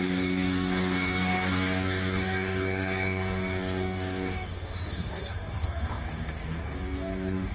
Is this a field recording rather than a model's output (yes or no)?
no